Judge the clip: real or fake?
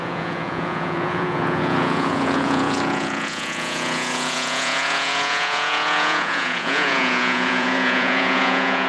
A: fake